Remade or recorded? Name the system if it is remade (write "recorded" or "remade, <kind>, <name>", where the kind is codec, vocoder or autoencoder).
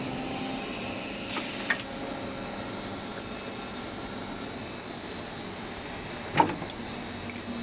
recorded